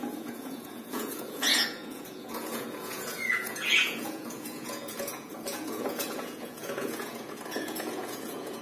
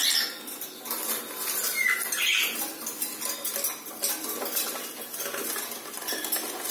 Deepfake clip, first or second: first